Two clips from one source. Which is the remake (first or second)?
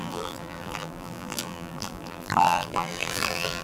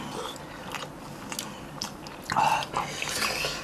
first